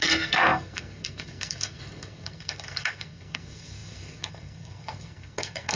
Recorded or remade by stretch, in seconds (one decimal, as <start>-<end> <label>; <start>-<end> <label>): 0.0-5.8 remade